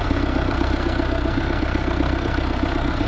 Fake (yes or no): yes